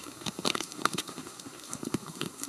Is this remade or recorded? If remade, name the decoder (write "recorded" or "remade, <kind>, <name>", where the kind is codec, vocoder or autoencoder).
remade, codec, SNAC